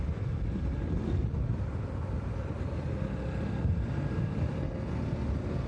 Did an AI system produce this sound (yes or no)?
no